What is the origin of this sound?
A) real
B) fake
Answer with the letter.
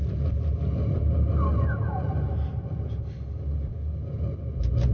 A